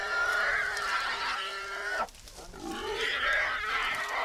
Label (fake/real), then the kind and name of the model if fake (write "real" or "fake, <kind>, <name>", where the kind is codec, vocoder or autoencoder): real